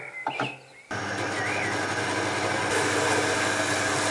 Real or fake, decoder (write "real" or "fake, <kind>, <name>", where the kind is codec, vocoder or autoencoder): real